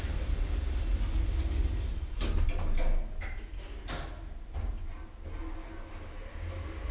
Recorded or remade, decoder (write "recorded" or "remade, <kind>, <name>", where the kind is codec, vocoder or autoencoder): recorded